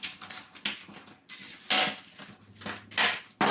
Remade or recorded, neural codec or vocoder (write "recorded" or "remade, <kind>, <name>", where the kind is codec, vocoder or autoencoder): recorded